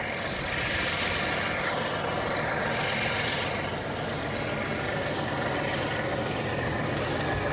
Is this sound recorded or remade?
recorded